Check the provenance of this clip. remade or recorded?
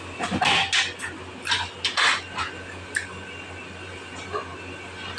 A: recorded